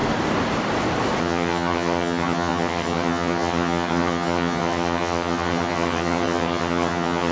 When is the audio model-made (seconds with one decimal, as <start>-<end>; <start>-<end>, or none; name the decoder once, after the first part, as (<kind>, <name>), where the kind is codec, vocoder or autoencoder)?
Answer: 1.2-7.3 (vocoder, HiFi-GAN)